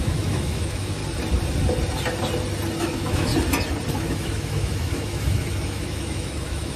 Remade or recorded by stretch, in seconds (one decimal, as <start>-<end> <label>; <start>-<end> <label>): 0.0-1.0 remade; 1.0-2.8 recorded; 2.8-3.3 remade; 3.3-3.9 recorded; 3.9-6.8 remade